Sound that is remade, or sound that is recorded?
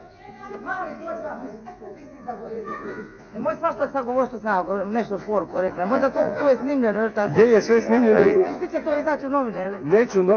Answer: remade